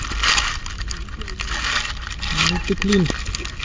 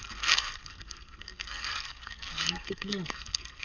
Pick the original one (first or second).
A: first